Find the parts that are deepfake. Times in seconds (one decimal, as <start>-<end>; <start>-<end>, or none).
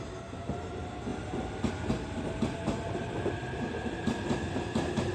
3.4-5.1